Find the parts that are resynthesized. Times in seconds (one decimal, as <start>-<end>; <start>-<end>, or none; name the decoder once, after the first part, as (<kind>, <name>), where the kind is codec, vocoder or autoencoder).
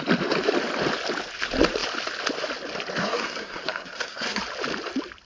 3.0-4.4 (codec, SNAC)